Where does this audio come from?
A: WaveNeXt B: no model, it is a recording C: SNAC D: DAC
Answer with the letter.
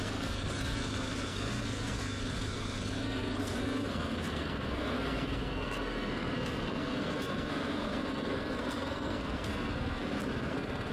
C